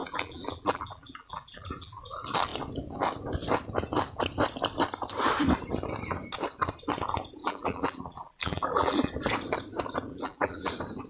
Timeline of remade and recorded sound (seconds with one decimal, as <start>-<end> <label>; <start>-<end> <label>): 0.0-2.0 remade; 2.0-7.4 recorded; 7.4-9.1 remade; 9.1-10.1 recorded; 10.1-10.7 remade; 10.7-11.1 recorded